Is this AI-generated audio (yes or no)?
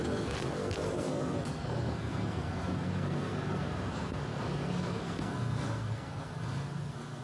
yes